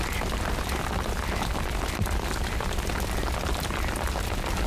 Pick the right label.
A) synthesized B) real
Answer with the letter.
B